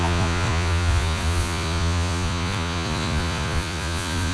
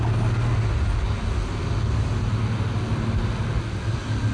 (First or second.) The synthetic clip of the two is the first